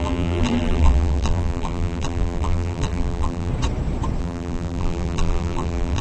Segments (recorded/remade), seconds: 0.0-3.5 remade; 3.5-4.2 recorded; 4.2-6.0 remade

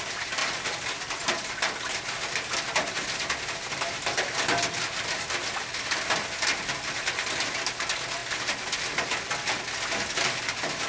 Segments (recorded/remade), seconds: 0.0-10.9 recorded

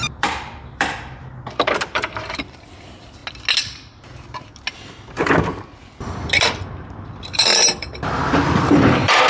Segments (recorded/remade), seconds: 0.0-3.2 remade; 3.2-5.4 recorded; 5.4-9.3 remade

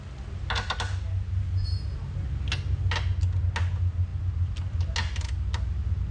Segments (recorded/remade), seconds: 0.0-6.1 recorded

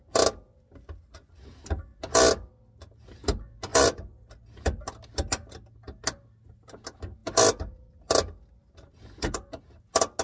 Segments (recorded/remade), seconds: 0.0-10.2 recorded

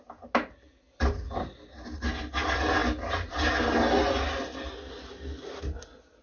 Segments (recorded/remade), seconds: 0.0-6.2 recorded

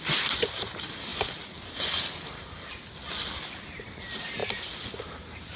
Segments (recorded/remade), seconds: 0.0-5.6 recorded